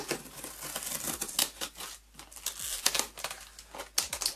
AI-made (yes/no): no